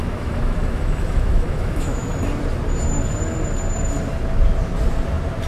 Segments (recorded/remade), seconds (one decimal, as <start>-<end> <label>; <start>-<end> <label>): 0.0-2.1 remade; 2.1-5.5 recorded